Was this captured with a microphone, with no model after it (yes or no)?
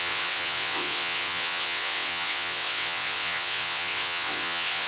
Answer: no